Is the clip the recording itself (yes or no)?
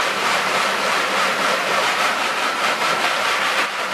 no